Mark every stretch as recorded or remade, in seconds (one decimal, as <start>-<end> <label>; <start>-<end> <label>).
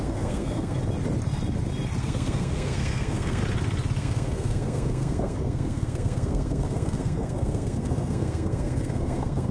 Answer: 0.0-0.8 remade; 0.8-2.0 recorded; 2.0-3.4 remade; 3.4-4.0 recorded; 4.0-9.5 remade